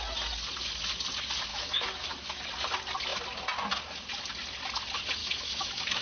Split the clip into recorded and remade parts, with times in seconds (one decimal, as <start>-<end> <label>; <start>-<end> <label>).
0.0-1.5 recorded; 1.5-2.4 remade; 2.4-5.2 recorded; 5.2-6.0 remade